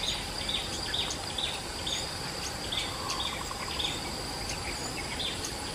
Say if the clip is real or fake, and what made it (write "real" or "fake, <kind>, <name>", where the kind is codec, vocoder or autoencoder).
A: real